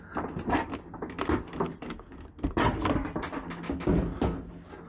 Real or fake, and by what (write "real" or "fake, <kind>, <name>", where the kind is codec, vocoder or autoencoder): real